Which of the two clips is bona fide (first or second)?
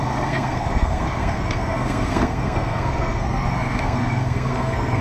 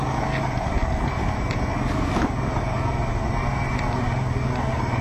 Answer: second